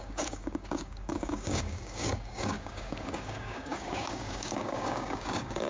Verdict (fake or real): fake